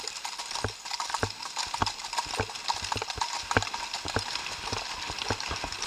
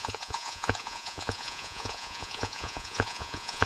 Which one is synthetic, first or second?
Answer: second